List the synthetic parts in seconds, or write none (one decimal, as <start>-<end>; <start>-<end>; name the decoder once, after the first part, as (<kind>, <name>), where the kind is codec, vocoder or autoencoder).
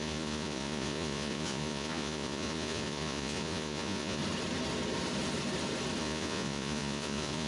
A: 0.0-4.2 (vocoder, Vocos); 6.0-7.5